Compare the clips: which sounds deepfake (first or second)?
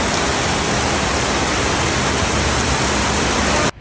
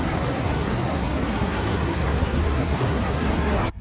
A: second